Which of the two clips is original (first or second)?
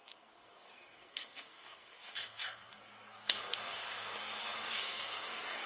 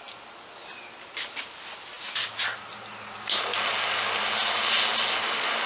second